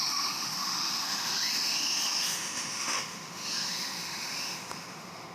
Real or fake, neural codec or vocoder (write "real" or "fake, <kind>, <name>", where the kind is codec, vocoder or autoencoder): fake, autoencoder, DAC-VAE